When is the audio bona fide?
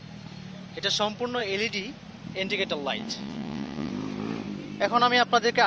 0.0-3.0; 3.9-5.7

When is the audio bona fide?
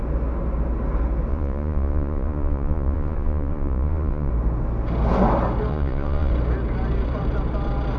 0.0-1.3; 4.3-5.7; 6.3-8.0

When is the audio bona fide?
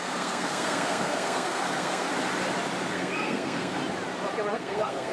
2.1-2.9; 3.8-4.5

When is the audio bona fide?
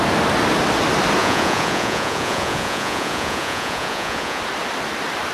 0.0-1.2; 4.4-5.3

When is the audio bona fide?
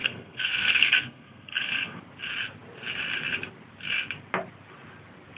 2.0-5.4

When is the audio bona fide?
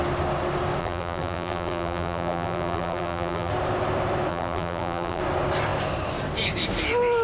0.0-0.8; 3.5-4.3; 5.2-7.2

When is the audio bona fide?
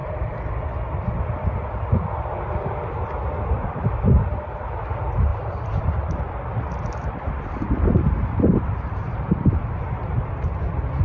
0.0-5.3; 9.7-11.0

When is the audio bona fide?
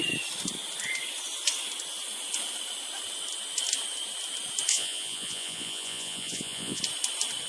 0.0-4.7; 6.8-7.5